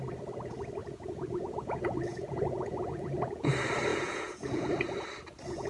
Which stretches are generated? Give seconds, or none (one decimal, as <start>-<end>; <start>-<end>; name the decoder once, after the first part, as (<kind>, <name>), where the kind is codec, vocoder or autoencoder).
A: 0.8-3.5 (vocoder, Vocos); 3.9-4.7